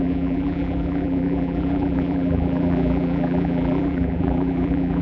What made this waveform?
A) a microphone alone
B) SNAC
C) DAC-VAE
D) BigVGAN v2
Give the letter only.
D